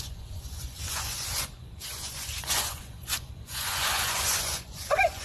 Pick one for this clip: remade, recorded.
remade